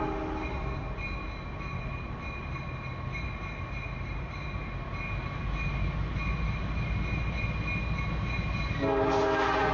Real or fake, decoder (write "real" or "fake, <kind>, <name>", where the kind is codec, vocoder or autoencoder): real